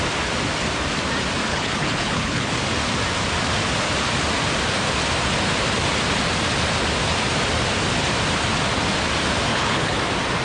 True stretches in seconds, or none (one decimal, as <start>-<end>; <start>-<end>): 0.0-1.5; 2.5-9.5; 10.0-10.4